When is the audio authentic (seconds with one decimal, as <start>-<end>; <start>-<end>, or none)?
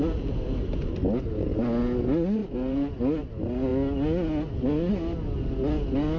0.0-2.4; 3.0-6.2